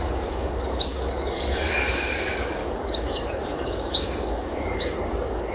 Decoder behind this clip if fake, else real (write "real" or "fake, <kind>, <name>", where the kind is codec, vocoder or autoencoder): fake, codec, DAC